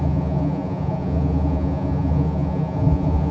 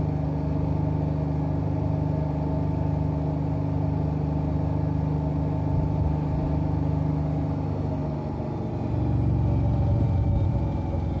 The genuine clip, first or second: second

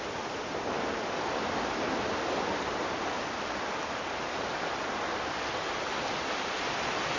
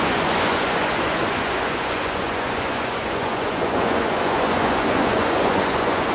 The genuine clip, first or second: first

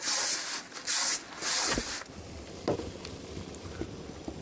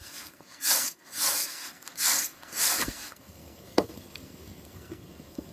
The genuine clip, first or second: first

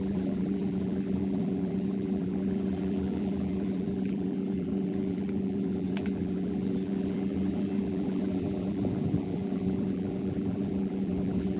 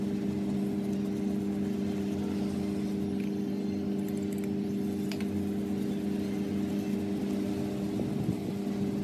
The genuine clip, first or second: second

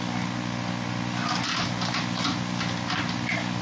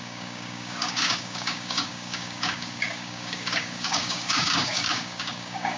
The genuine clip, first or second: first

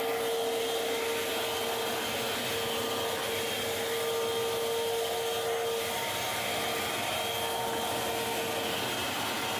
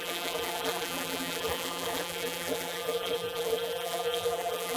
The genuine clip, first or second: first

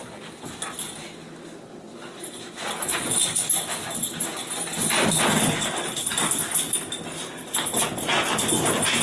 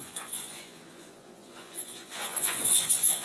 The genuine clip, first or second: first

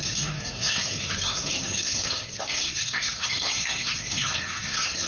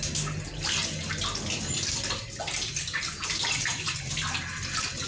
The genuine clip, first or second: second